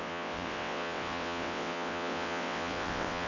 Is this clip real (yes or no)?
no